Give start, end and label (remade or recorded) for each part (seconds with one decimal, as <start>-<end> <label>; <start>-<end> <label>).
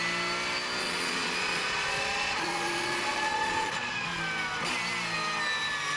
0.0-0.8 recorded; 0.8-4.2 remade; 4.2-6.0 recorded